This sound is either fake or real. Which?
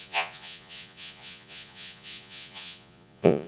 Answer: fake